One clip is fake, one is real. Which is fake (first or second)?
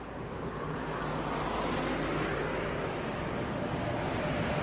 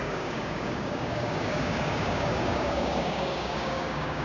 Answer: second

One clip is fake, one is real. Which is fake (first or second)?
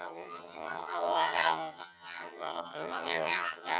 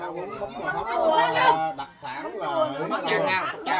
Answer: first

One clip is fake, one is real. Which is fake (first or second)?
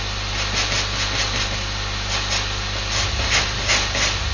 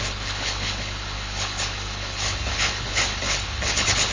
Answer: second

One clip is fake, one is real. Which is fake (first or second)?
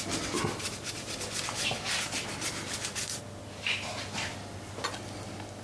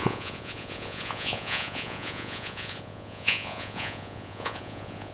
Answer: second